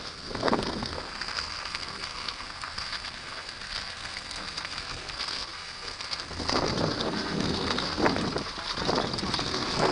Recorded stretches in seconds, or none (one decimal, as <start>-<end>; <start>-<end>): 8.0-9.4